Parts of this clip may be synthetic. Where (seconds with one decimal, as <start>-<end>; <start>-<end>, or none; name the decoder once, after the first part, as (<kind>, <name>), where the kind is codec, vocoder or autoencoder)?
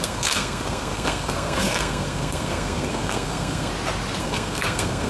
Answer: 0.0-3.7 (codec, SNAC); 4.2-5.1